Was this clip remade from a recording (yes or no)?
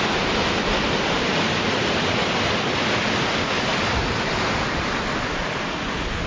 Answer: no